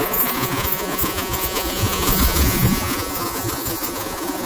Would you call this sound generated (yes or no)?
yes